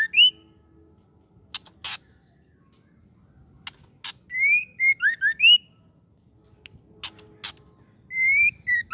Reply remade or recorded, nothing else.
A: recorded